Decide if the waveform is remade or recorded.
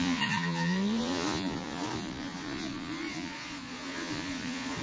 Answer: remade